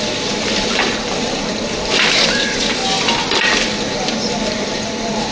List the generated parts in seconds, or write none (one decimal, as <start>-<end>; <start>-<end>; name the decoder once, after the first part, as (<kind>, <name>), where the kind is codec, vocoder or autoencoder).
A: 0.0-2.8 (vocoder, BigVGAN v2); 3.9-5.3